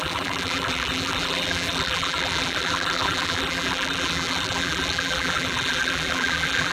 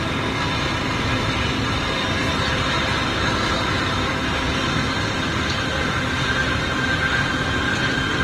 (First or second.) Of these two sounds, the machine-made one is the first